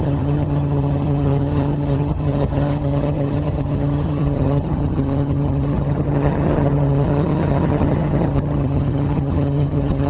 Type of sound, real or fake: fake